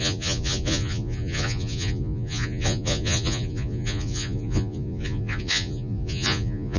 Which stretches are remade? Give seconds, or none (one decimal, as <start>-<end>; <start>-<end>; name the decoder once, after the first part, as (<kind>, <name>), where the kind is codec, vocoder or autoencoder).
0.0-6.8 (vocoder, Vocos)